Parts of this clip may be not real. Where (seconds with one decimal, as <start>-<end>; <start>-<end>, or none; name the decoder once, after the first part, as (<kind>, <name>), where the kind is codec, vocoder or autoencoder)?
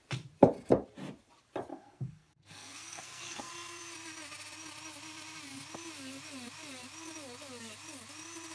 1.7-3.5 (codec, SNAC)